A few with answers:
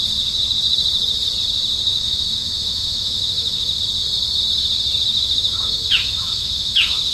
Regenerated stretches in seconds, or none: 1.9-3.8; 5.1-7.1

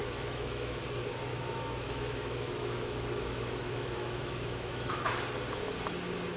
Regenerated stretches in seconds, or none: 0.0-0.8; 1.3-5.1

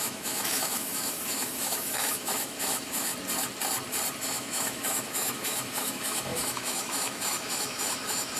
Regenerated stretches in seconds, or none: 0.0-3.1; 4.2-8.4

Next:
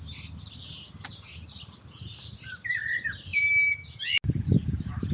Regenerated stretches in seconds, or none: none

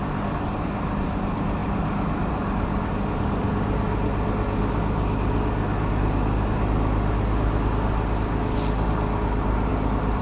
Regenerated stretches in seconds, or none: none

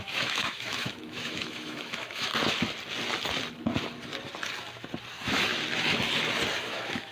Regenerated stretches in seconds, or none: 0.0-2.3; 5.1-5.5; 6.6-7.1

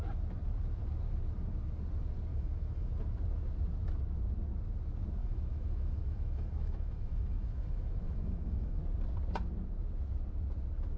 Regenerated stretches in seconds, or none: 2.3-2.9; 5.2-8.8

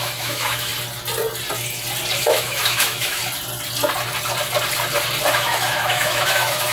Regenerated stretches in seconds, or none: 0.0-0.7; 2.2-3.2; 5.3-6.7